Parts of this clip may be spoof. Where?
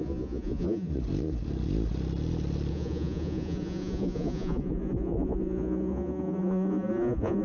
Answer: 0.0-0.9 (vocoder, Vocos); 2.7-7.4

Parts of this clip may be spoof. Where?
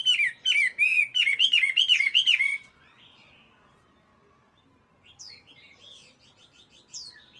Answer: 1.0-3.3 (vocoder, Vocos)